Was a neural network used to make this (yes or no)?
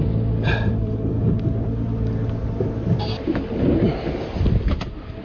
no